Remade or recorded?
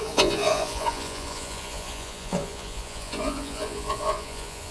remade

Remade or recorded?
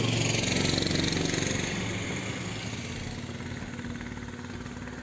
recorded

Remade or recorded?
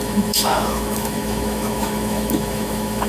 remade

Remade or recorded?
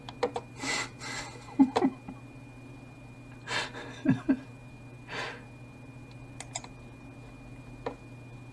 recorded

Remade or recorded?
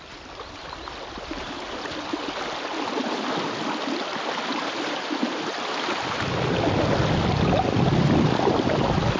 recorded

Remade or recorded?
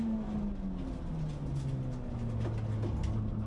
recorded